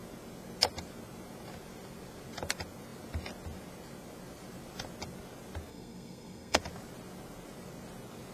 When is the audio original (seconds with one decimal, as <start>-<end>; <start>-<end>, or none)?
0.0-5.7; 6.6-8.3